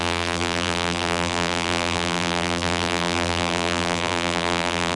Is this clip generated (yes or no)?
yes